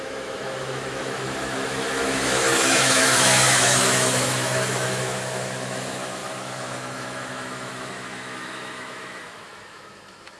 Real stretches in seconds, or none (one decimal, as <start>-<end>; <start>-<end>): none